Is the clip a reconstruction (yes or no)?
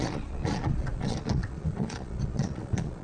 yes